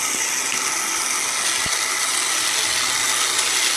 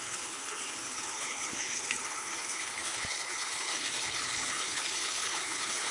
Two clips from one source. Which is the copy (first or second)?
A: second